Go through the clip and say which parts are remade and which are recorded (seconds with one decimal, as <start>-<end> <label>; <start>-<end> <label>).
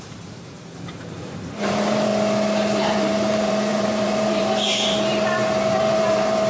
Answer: 0.0-2.1 remade; 2.1-2.8 recorded; 2.8-6.5 remade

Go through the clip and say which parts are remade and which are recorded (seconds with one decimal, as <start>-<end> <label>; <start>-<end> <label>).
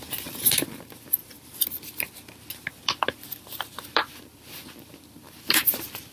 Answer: 0.0-6.1 remade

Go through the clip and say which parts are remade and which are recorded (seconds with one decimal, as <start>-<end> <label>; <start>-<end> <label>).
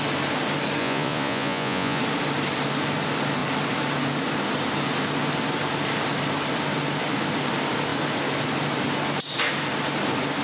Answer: 0.0-0.8 recorded; 0.8-2.0 remade; 2.0-10.4 recorded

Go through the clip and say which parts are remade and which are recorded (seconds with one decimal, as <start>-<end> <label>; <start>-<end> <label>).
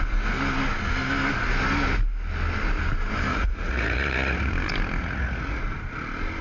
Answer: 0.0-3.3 recorded; 3.3-4.5 remade; 4.5-5.0 recorded; 5.0-5.6 remade; 5.6-6.4 recorded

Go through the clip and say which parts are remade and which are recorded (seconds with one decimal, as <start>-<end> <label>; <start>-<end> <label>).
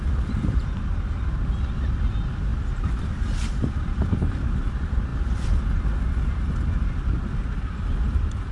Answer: 0.0-5.1 remade; 5.1-7.9 recorded; 7.9-8.5 remade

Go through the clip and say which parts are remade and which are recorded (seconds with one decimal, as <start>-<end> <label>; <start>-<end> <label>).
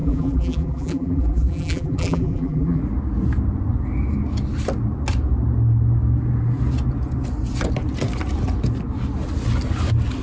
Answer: 0.0-2.8 remade; 2.8-10.2 recorded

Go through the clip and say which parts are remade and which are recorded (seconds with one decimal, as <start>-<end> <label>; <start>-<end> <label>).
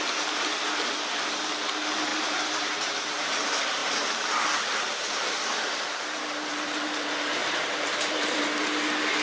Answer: 0.0-2.1 recorded; 2.1-3.0 remade; 3.0-7.4 recorded; 7.4-8.4 remade; 8.4-9.2 recorded